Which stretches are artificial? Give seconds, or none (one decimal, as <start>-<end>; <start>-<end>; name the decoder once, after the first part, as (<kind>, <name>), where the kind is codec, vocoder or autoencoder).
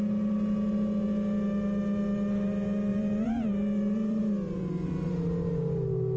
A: 2.9-4.2 (vocoder, BigVGAN v2)